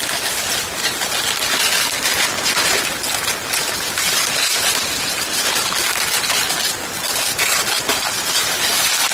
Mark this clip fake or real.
real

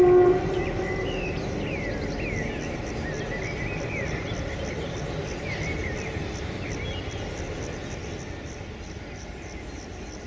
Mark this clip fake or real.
real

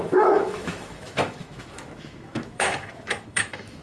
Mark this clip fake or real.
fake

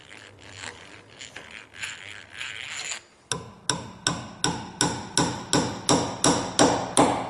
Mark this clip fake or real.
real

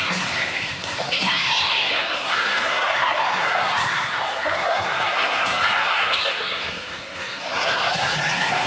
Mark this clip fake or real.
fake